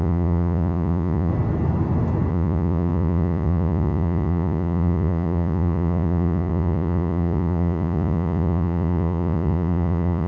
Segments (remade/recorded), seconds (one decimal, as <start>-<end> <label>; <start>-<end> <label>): 0.0-1.3 remade; 1.3-2.3 recorded; 2.3-10.3 remade